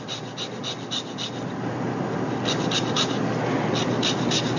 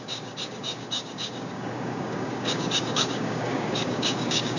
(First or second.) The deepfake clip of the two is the second